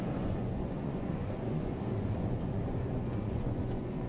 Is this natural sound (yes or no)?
no